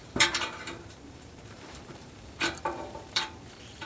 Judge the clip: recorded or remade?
remade